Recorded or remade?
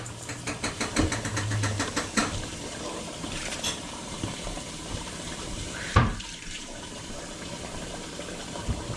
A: remade